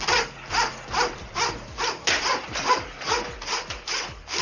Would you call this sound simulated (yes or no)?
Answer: yes